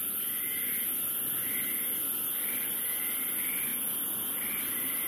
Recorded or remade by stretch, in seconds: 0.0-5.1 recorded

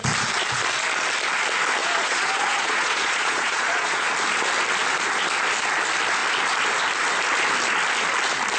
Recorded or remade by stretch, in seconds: 0.0-1.8 recorded; 1.8-4.1 remade; 4.1-8.6 recorded

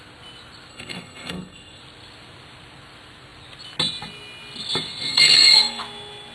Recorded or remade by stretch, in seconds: 0.0-0.7 recorded; 0.7-1.8 remade; 1.8-5.1 recorded; 5.1-5.8 remade; 5.8-6.3 recorded

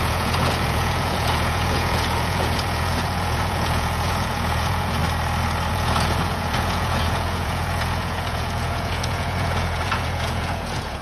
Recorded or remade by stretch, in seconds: 0.0-5.0 remade; 5.0-5.7 recorded; 5.7-11.0 remade

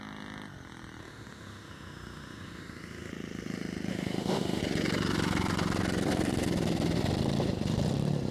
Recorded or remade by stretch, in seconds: 0.0-1.0 recorded; 1.0-3.1 remade; 3.1-3.9 recorded; 3.9-4.6 remade; 4.6-8.3 recorded

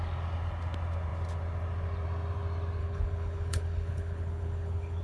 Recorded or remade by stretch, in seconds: 0.0-2.8 recorded; 2.8-5.0 remade

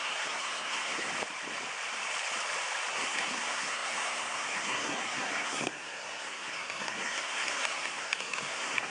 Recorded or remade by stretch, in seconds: 0.0-1.1 remade; 1.1-2.9 recorded; 2.9-8.9 remade

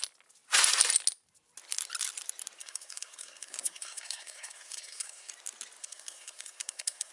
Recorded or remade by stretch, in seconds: 0.0-2.6 recorded; 2.6-5.3 remade; 5.3-5.8 recorded; 5.8-7.1 remade